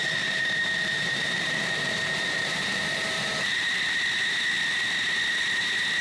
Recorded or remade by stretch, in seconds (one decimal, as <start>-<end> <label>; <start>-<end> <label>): 0.0-3.6 remade; 3.6-6.0 recorded